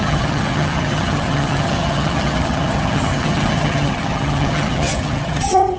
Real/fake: fake